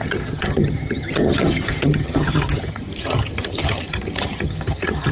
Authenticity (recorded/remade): remade